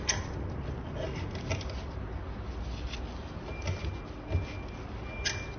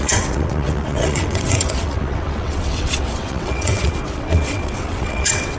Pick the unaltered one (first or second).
first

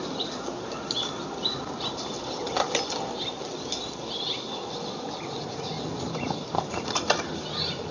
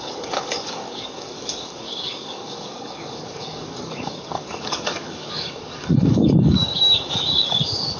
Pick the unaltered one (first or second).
first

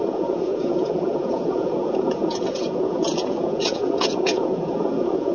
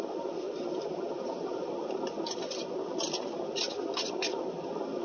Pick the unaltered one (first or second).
second